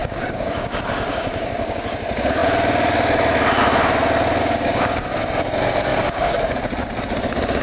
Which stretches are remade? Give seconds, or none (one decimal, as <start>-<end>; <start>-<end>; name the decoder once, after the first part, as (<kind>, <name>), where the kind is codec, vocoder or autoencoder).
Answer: 0.0-1.8 (codec, DAC); 4.4-5.0; 5.9-6.6